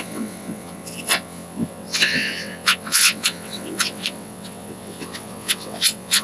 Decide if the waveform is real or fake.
fake